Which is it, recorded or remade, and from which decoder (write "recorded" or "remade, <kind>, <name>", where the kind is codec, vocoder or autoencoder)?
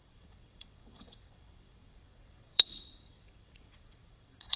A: remade, vocoder, WaveNeXt